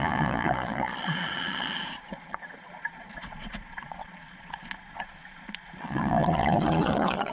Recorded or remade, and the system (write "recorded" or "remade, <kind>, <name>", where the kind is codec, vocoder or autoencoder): remade, vocoder, Vocos